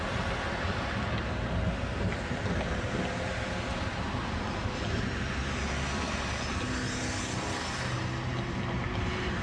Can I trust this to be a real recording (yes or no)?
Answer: yes